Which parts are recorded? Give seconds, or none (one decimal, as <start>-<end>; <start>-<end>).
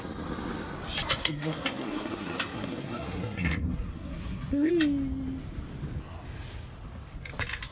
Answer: 0.0-1.2; 4.7-7.7